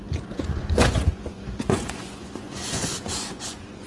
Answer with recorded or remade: remade